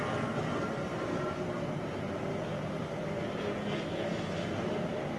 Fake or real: real